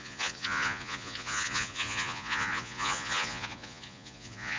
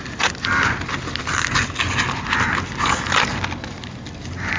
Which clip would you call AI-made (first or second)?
first